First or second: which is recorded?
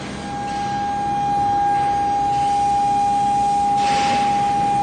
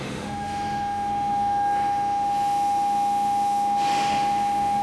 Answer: first